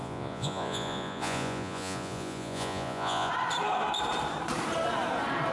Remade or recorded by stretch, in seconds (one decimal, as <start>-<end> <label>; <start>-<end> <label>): 0.0-3.3 remade; 3.3-5.5 recorded

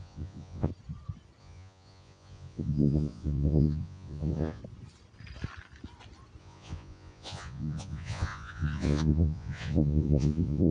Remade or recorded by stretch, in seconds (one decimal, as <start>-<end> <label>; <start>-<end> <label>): 0.0-0.7 remade; 0.7-1.4 recorded; 1.4-4.6 remade; 4.6-6.4 recorded; 6.4-10.7 remade

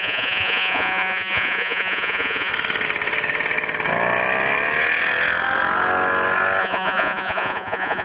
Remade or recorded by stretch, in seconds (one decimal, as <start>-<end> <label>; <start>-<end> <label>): 0.0-2.5 remade; 2.5-6.6 recorded; 6.6-8.0 remade

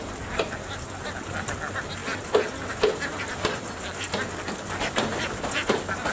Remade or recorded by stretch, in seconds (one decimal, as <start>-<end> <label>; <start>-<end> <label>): 0.0-6.1 recorded